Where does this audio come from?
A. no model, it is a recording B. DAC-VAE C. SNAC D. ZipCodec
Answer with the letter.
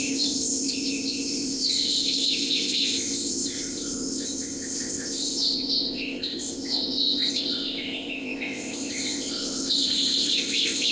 D